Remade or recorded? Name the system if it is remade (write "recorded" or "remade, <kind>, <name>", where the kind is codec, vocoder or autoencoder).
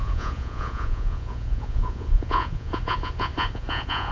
remade, vocoder, Vocos